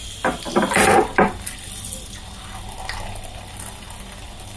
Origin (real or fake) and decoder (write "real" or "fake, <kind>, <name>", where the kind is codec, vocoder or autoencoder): real